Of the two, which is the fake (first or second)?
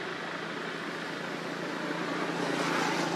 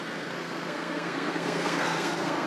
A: second